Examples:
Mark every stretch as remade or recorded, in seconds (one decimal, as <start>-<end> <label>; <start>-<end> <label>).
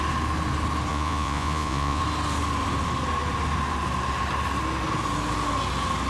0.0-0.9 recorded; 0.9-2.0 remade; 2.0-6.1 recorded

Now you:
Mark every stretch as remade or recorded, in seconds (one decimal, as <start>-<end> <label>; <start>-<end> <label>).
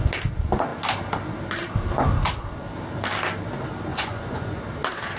0.0-3.9 recorded; 3.9-4.6 remade; 4.6-5.2 recorded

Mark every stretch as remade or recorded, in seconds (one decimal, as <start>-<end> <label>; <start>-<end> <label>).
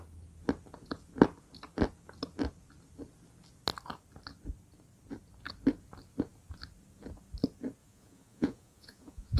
0.0-7.8 recorded; 7.8-9.4 remade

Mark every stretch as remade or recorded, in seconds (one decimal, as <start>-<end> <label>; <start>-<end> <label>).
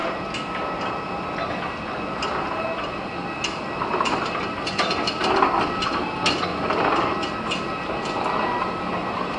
0.0-9.4 recorded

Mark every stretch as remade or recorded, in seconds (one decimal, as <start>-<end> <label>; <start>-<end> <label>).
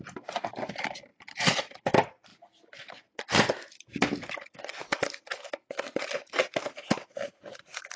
0.0-8.0 recorded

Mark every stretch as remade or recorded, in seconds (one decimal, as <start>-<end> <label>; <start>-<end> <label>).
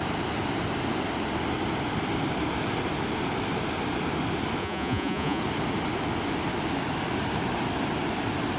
0.0-4.6 recorded; 4.6-5.4 remade; 5.4-8.6 recorded